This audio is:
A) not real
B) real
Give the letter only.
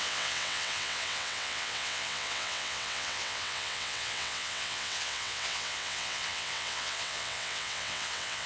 A